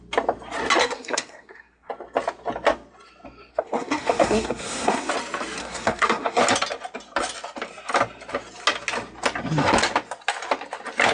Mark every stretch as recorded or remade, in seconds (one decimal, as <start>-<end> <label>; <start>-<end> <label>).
0.0-0.8 recorded; 0.8-1.9 remade; 1.9-3.5 recorded; 3.5-5.1 remade; 5.1-5.6 recorded; 5.6-6.4 remade; 6.4-11.1 recorded